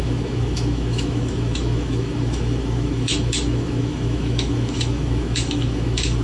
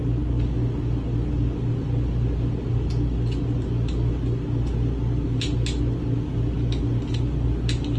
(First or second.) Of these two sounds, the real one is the second